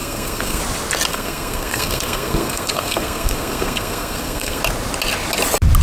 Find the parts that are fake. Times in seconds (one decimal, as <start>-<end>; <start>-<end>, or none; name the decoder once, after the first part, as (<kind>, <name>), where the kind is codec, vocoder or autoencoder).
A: 0.0-0.6 (codec, SNAC); 1.1-4.6